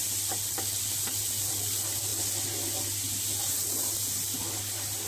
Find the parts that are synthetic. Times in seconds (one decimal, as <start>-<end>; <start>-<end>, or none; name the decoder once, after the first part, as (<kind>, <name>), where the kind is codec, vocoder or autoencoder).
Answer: none